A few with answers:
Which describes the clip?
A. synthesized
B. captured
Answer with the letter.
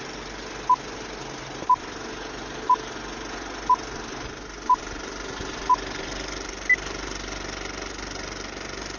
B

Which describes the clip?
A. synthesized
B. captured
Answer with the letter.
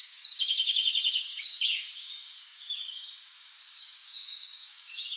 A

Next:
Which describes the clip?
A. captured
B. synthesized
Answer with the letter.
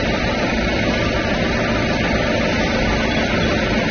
A